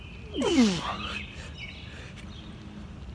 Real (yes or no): yes